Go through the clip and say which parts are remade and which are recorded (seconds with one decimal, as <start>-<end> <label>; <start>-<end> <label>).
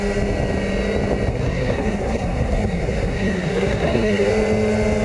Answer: 0.0-1.3 recorded; 1.3-4.3 remade; 4.3-5.0 recorded